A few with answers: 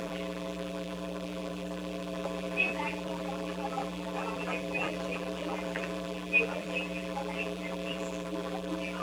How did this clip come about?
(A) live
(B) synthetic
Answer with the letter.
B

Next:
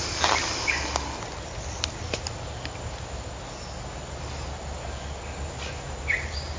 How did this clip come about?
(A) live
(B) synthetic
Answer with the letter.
A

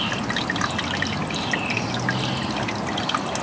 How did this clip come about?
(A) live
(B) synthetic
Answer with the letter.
A